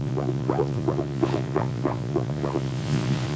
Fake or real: fake